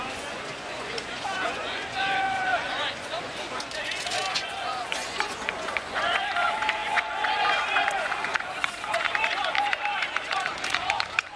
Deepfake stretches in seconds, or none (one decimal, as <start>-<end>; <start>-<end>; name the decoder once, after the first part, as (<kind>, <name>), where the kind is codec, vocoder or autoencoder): 0.0-11.4 (vocoder, Vocos)